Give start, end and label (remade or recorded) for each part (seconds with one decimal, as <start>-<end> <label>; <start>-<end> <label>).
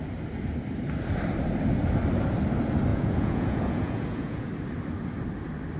0.0-2.9 recorded; 2.9-4.5 remade; 4.5-5.8 recorded